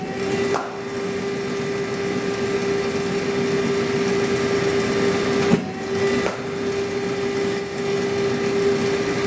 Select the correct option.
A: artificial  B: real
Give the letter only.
B